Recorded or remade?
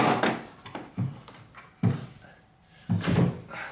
recorded